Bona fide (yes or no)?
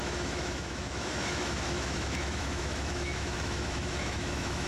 no